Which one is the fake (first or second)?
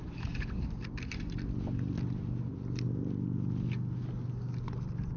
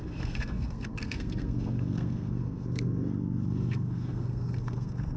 second